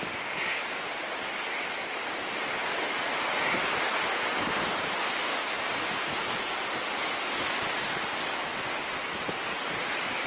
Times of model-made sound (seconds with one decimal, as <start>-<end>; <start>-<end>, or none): none